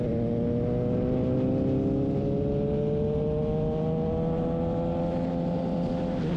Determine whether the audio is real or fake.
real